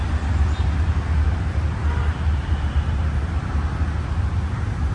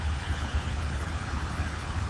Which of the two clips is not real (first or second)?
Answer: second